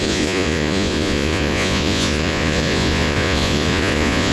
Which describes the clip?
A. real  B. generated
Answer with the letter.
B